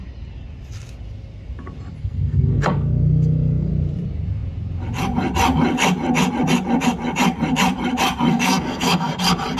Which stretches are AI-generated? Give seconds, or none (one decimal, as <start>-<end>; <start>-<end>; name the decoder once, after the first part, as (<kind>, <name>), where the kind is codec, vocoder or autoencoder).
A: 2.0-3.7 (codec, SNAC); 8.3-9.1